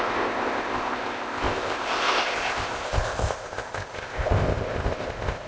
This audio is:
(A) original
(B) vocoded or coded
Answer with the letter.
B